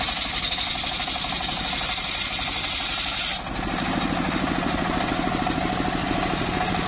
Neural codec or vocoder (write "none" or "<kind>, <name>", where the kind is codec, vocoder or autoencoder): none